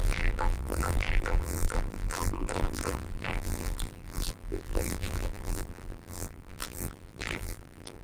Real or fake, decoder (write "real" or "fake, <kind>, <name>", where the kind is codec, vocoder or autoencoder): fake, vocoder, BigVGAN v2